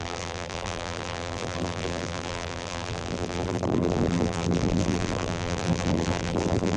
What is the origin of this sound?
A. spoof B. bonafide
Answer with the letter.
A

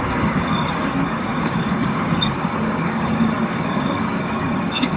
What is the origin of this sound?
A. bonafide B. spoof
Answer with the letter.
B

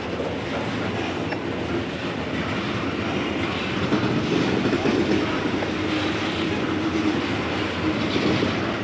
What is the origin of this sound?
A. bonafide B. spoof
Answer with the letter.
A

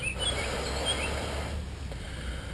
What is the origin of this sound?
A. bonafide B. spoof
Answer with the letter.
A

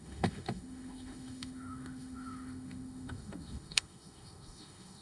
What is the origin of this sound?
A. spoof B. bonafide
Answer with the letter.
A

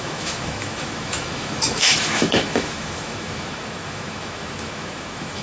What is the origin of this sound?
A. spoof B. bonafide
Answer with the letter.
A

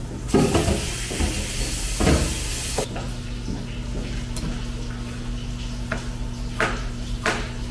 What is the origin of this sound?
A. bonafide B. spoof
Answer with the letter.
A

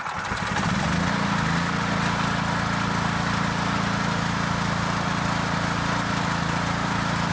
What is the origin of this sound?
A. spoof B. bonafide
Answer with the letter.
B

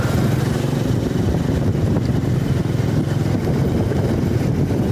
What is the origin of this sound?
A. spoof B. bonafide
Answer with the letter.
A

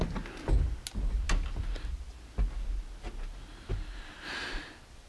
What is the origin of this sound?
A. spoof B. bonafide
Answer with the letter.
B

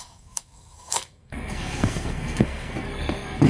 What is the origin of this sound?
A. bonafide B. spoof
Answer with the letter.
B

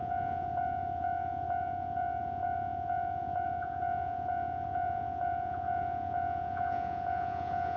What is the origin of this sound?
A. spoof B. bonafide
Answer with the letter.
A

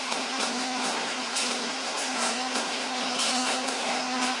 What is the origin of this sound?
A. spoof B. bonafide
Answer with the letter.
A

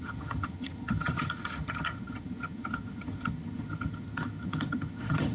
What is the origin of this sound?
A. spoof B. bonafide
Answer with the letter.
A